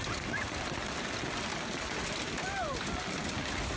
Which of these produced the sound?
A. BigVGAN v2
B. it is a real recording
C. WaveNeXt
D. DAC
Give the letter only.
B